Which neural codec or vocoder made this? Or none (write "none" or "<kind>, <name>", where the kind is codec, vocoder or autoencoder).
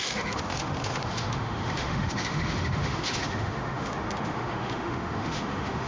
autoencoder, DAC-VAE